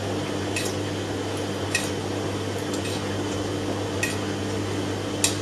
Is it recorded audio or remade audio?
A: recorded